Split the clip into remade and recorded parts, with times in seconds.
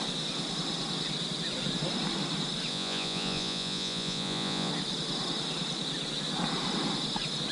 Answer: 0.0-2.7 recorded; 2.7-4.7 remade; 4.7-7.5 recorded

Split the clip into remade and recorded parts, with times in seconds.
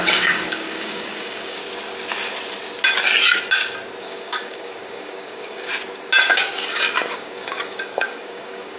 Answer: 0.0-1.6 remade; 1.6-4.0 recorded; 4.0-5.7 remade; 5.7-6.3 recorded; 6.3-8.8 remade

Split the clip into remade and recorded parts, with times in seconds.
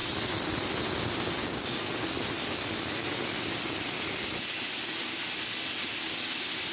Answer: 0.0-1.4 recorded; 1.4-1.9 remade; 1.9-6.7 recorded